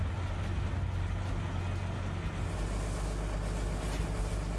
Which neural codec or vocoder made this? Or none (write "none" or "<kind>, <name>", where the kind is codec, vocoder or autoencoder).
none